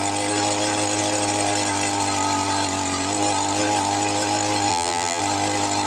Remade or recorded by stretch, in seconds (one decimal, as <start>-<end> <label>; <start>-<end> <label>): 0.0-4.7 recorded; 4.7-5.2 remade; 5.2-5.9 recorded